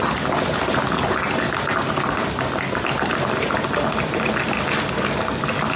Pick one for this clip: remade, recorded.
recorded